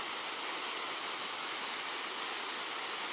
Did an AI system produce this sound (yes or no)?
no